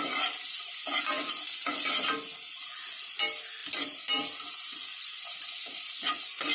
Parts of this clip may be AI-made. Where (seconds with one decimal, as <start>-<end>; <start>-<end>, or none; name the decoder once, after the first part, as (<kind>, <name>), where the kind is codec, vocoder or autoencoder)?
none